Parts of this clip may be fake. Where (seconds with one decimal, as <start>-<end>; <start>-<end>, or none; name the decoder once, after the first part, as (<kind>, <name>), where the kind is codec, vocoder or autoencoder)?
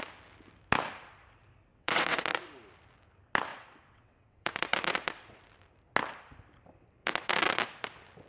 1.7-2.5 (vocoder, WaveNeXt); 3.5-5.4; 7.0-7.6